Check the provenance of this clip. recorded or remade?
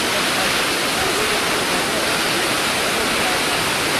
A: recorded